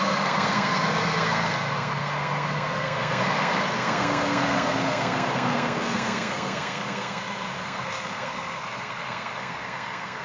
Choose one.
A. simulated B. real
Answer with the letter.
A